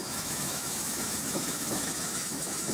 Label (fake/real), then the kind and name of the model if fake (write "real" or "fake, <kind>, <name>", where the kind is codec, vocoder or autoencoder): fake, autoencoder, DAC-VAE